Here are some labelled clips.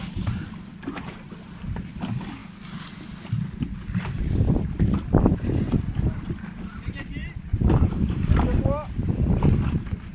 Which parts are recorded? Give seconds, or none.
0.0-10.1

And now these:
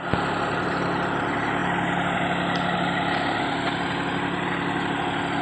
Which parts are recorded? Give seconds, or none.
0.0-5.4